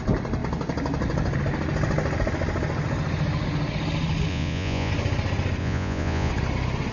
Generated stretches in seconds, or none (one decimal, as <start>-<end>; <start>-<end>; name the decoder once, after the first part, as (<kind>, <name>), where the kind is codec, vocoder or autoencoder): 4.3-4.9 (vocoder, Vocos); 5.6-6.3